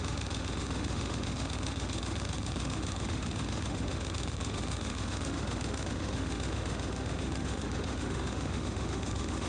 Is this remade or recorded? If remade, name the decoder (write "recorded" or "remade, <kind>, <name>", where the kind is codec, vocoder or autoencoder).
remade, autoencoder, DAC-VAE